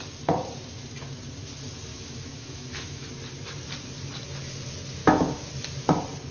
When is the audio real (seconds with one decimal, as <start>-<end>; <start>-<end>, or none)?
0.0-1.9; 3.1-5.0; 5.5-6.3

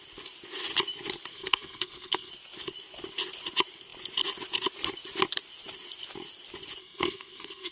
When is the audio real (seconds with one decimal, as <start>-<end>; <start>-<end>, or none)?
0.0-1.3; 2.3-6.8

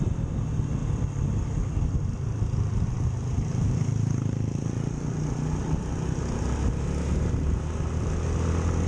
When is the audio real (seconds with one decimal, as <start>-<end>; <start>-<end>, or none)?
0.0-8.9

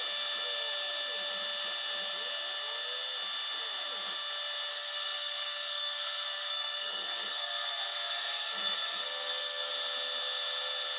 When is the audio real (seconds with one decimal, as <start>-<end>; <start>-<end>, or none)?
0.0-4.7; 9.7-11.0